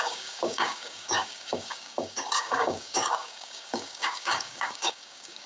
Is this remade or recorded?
remade